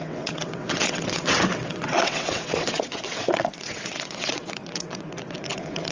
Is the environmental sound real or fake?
fake